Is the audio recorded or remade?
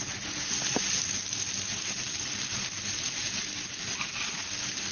recorded